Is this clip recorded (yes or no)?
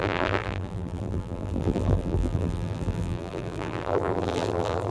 no